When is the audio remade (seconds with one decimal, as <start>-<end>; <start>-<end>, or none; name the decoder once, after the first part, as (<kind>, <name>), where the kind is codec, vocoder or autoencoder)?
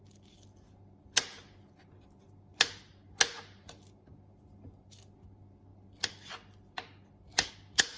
none